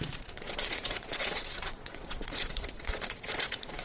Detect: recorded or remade remade